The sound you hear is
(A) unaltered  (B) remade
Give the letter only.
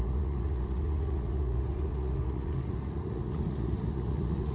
B